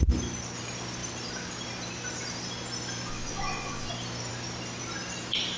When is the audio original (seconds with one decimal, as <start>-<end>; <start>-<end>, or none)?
0.0-3.1; 3.9-5.6